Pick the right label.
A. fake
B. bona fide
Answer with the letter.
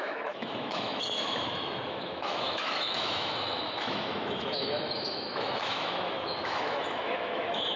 A